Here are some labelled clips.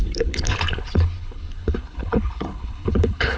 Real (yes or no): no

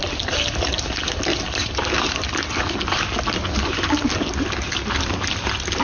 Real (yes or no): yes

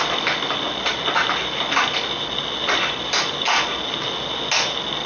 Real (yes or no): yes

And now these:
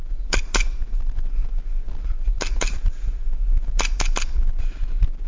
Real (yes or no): yes